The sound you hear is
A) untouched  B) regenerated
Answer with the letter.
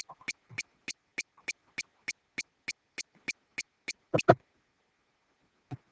A